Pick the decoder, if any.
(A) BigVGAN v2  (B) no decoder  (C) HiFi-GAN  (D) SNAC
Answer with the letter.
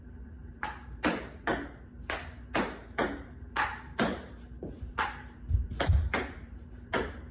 A